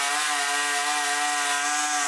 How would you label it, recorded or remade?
recorded